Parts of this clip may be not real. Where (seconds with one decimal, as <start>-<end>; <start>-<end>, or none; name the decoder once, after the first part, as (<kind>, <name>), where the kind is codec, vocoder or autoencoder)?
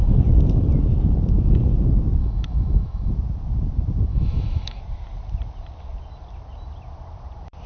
2.2-3.1 (autoencoder, DAC-VAE); 4.1-4.8